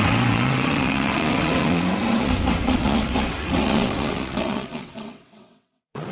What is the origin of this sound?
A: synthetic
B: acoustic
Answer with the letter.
A